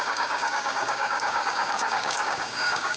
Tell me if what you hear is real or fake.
fake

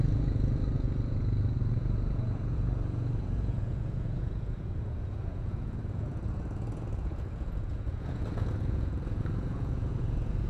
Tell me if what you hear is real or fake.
fake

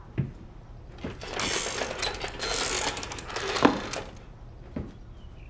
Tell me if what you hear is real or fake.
real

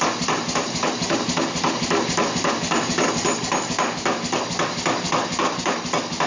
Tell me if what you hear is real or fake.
real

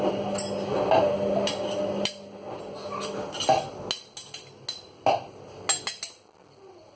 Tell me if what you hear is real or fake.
real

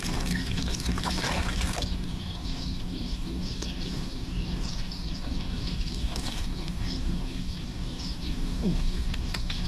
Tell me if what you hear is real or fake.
fake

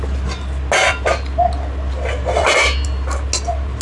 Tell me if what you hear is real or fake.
real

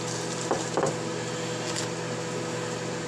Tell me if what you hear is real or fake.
real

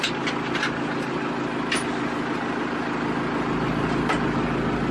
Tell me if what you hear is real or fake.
real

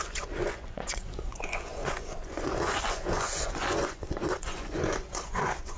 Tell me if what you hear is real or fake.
fake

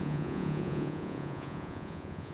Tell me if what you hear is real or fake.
fake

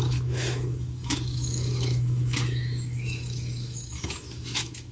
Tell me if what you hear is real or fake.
fake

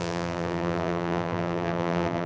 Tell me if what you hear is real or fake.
fake